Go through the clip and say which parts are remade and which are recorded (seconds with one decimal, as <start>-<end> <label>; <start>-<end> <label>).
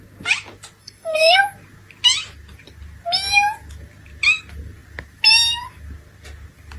0.0-0.8 recorded; 0.8-1.4 remade; 1.4-6.8 recorded